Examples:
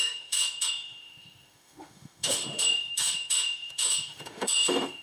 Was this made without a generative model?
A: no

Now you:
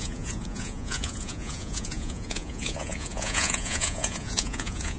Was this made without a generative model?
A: no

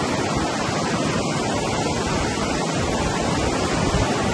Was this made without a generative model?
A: yes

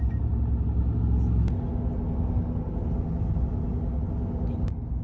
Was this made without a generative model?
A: yes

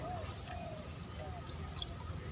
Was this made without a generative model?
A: yes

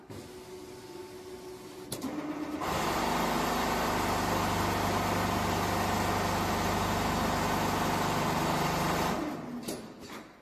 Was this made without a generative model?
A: yes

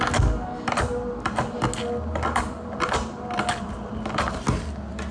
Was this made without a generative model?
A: yes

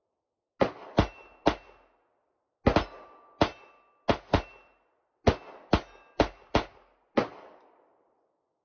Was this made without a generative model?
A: yes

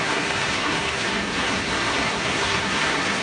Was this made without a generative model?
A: no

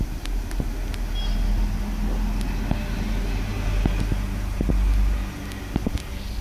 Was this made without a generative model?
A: yes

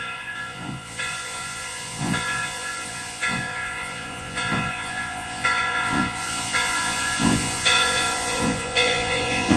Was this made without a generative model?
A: no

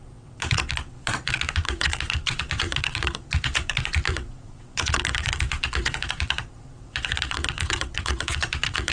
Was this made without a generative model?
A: no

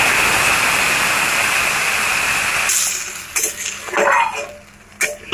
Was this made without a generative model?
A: yes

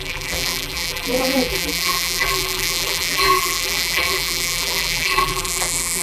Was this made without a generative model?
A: no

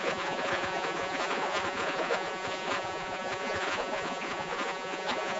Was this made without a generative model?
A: no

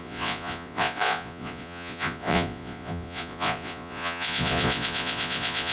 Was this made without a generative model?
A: no